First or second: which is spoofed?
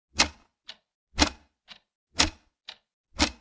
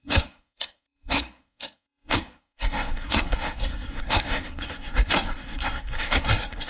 second